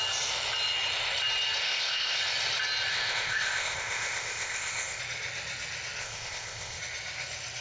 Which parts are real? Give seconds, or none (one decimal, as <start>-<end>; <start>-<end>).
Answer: 0.0-1.6; 2.2-2.9; 5.0-6.0; 6.8-7.6